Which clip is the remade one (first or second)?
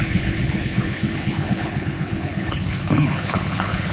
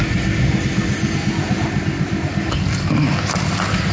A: first